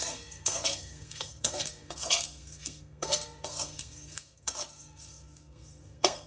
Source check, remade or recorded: remade